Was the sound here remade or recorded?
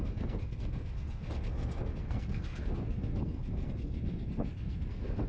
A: remade